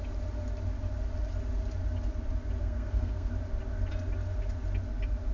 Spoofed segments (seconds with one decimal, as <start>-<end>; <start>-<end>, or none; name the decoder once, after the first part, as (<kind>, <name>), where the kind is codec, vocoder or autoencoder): 2.6-3.3 (codec, SNAC)